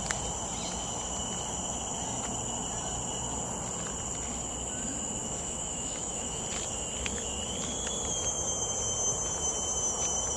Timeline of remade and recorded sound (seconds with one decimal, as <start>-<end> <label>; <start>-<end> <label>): 0.0-5.2 recorded; 5.2-6.4 remade; 6.4-10.4 recorded